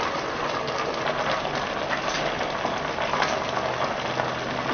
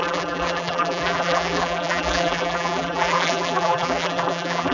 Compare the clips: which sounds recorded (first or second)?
first